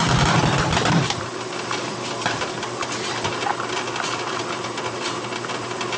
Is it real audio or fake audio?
real